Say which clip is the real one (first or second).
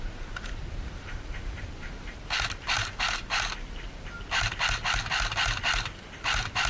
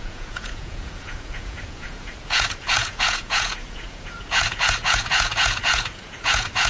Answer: first